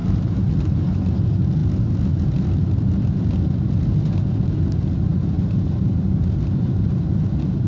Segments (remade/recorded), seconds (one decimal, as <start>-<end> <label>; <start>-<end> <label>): 0.0-0.5 remade; 0.5-5.1 recorded; 5.1-7.7 remade